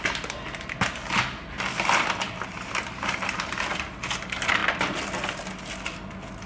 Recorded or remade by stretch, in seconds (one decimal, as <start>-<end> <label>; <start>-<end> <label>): 0.0-6.5 recorded